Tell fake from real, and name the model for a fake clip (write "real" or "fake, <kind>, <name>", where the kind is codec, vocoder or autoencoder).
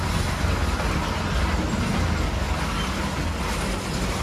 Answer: real